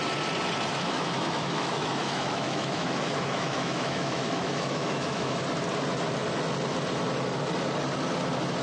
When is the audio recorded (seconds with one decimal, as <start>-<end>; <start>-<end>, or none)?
0.0-0.7; 5.4-8.6